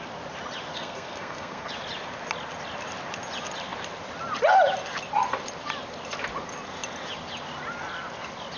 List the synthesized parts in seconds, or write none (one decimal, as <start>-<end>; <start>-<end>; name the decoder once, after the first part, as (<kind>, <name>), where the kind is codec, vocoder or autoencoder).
0.7-1.7 (codec, SNAC)